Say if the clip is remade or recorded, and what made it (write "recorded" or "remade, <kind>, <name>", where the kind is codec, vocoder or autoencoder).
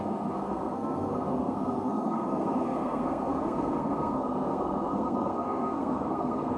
remade, codec, SNAC